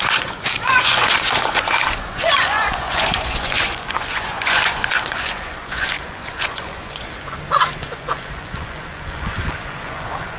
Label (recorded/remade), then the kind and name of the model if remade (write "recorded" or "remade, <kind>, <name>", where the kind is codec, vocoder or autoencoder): remade, vocoder, Vocos